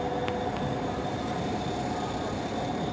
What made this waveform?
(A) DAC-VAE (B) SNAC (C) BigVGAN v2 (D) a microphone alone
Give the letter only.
D